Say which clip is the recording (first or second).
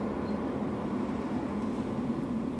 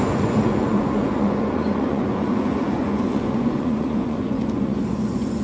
first